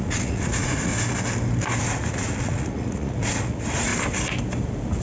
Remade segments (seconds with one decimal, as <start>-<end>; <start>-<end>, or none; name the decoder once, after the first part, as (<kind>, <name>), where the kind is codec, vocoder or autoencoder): 0.0-0.9 (vocoder, Vocos); 1.8-3.9

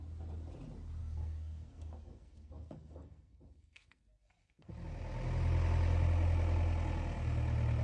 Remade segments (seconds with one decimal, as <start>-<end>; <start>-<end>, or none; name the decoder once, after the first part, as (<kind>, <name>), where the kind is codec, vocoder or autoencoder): 1.0-4.7 (codec, SNAC)